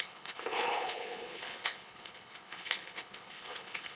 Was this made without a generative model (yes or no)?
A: no